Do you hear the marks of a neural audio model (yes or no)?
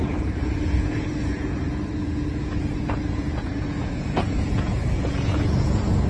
yes